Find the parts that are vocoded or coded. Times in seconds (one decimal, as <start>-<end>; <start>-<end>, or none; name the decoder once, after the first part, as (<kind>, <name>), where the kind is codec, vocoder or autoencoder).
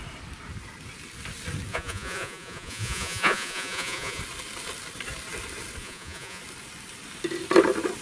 1.7-4.2 (vocoder, Vocos); 5.8-6.4